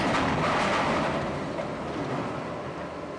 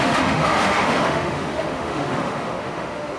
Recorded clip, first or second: first